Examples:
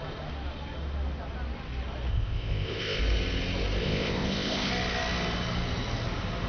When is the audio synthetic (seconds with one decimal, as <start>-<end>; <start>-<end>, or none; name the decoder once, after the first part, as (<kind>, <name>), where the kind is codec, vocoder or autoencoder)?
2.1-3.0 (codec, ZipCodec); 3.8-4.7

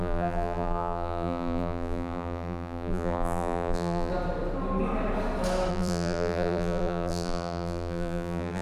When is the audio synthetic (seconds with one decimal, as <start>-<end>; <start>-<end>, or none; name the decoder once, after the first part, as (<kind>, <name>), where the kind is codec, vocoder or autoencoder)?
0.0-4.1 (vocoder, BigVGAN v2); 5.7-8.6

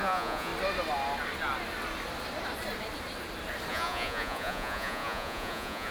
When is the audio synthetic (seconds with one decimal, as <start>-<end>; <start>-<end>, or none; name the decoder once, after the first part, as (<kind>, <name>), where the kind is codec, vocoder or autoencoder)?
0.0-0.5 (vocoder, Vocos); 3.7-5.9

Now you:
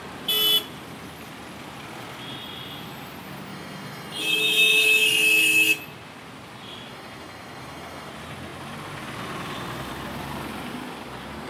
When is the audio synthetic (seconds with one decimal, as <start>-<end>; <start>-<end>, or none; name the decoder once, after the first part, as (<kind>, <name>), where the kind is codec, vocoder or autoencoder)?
3.5-5.8 (autoencoder, DAC-VAE); 6.9-8.1